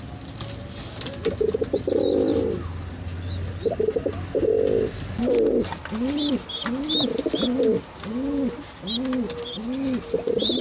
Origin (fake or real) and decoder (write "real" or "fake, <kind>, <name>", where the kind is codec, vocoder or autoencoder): real